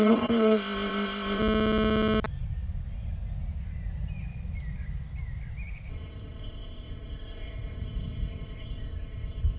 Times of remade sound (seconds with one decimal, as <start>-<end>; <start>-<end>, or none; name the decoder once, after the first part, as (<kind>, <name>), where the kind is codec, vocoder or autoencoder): 0.0-1.4 (codec, ZipCodec); 5.9-9.6